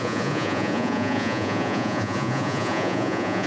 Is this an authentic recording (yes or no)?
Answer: no